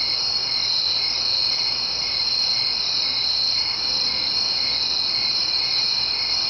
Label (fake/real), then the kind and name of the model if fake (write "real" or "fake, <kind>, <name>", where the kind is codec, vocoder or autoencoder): real